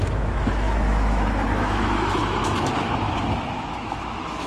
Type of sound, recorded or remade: remade